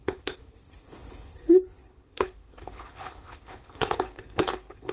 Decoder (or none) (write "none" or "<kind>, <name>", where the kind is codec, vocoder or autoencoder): codec, HILCodec